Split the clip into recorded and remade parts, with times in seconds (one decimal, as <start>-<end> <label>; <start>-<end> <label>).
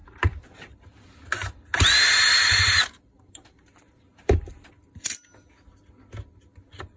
0.0-1.2 remade; 1.2-2.3 recorded; 2.3-4.7 remade; 4.7-7.0 recorded